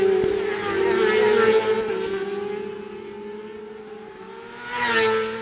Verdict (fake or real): real